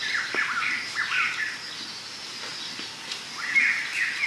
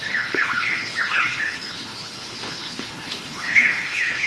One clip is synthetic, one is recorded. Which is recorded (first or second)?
first